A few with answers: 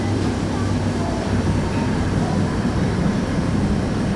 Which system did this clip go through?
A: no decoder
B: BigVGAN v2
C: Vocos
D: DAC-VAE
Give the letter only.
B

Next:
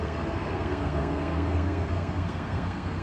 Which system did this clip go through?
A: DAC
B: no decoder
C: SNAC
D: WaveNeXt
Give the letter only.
C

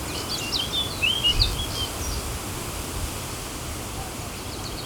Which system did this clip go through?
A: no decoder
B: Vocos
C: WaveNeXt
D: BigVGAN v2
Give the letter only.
A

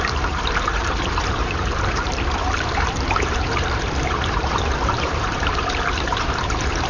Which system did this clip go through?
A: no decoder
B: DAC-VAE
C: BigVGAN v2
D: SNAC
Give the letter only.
C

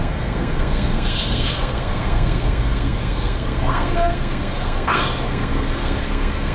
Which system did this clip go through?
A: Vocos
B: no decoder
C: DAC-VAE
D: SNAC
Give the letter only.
D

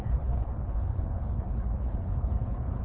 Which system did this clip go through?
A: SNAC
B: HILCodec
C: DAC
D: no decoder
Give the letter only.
B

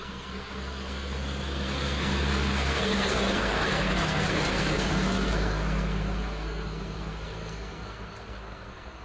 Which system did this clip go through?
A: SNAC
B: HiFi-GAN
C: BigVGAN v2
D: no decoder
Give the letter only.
A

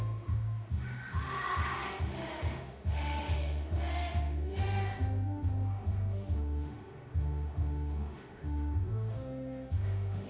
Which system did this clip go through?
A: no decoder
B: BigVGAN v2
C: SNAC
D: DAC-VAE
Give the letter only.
D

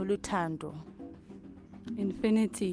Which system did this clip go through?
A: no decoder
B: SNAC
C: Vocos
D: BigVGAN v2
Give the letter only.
A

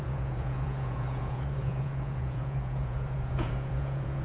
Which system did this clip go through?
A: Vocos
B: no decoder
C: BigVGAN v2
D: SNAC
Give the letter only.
A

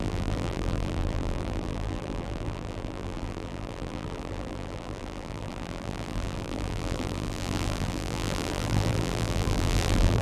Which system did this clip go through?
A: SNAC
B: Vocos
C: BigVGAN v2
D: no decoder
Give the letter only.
C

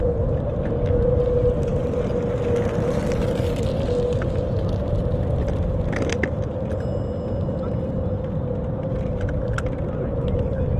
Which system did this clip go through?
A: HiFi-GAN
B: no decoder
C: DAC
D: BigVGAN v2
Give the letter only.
B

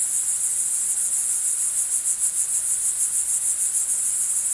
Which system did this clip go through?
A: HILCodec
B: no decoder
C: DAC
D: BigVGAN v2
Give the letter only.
B